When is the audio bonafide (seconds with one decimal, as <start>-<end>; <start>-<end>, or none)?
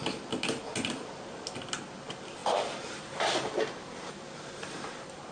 0.0-5.3